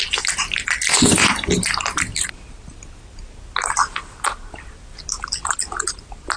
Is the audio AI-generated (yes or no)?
no